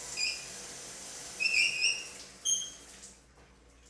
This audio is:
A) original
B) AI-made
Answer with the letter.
A